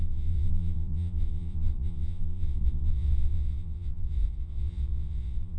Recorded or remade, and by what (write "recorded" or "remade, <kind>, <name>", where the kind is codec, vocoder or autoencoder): remade, vocoder, Vocos